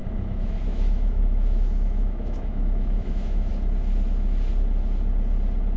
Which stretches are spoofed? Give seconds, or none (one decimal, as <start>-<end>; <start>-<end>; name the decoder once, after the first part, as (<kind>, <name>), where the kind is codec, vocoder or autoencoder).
0.0-3.5 (autoencoder, DAC-VAE)